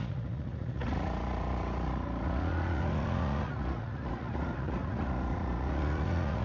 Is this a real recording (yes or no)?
no